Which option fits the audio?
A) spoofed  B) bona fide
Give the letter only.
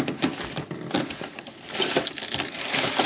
B